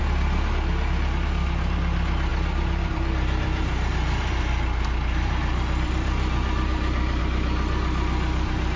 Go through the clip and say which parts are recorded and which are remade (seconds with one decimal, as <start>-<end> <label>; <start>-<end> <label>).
0.0-2.3 recorded; 2.3-7.2 remade; 7.2-8.8 recorded